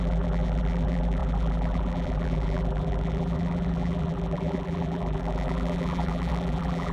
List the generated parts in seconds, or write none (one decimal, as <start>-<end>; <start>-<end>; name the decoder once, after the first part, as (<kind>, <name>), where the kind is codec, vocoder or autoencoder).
0.0-6.9 (vocoder, BigVGAN v2)